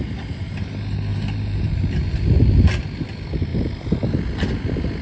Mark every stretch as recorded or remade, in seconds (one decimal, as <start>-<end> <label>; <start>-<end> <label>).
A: 0.0-0.7 remade; 0.7-1.1 recorded; 1.1-2.2 remade; 2.2-5.0 recorded